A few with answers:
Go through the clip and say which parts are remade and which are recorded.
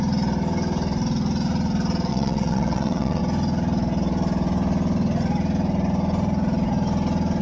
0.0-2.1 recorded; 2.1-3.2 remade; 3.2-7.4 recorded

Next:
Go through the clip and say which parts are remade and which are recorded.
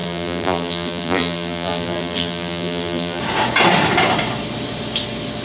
0.0-3.2 remade; 3.2-5.4 recorded